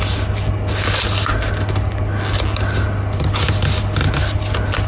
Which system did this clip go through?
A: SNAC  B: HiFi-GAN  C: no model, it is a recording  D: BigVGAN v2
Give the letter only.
C